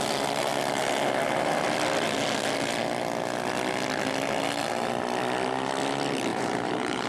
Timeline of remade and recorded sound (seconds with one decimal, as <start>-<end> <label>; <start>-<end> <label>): 0.0-6.3 recorded; 6.3-7.1 remade